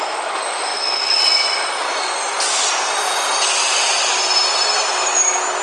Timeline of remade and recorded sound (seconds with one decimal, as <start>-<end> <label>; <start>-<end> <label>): 0.0-5.6 recorded